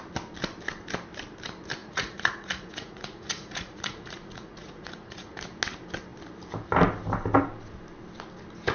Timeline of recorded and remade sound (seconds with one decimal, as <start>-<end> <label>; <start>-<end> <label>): 0.0-1.8 recorded; 1.8-5.3 remade; 5.3-8.7 recorded